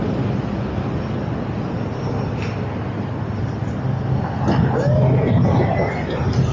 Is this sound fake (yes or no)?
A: no